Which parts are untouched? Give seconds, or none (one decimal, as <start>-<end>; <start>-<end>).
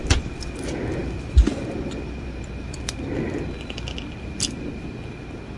0.0-5.6